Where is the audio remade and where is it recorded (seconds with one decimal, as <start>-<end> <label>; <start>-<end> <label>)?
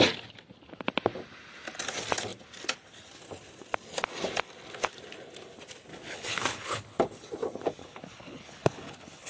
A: 0.0-5.9 recorded; 5.9-7.0 remade; 7.0-7.8 recorded; 7.8-9.3 remade